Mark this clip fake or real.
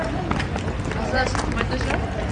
real